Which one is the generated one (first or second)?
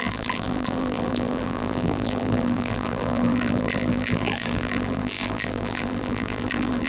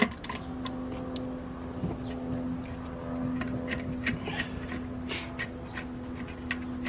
first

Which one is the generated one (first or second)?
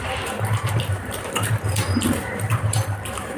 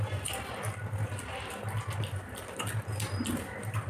first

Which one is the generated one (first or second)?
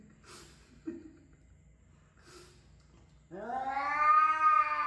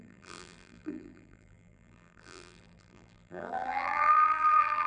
second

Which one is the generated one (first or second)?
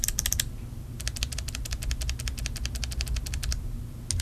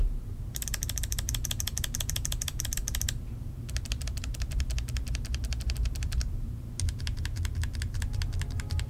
second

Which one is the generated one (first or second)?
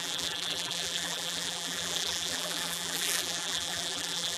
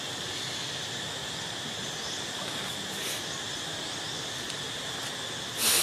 first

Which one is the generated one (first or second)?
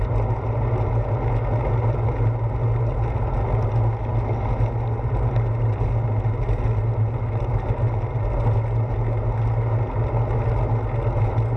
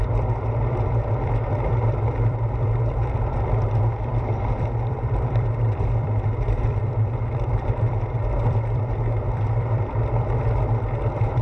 second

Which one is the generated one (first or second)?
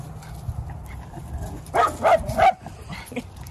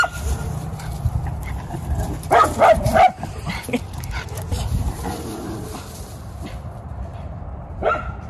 second